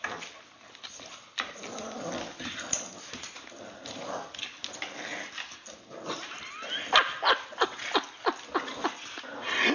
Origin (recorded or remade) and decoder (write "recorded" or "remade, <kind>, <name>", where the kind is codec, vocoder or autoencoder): recorded